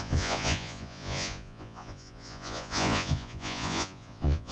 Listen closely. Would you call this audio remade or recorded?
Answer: remade